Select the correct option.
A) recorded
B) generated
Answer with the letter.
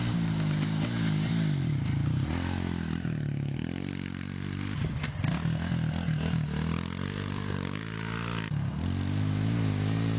A